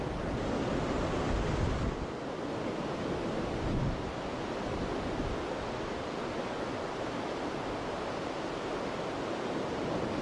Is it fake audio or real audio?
real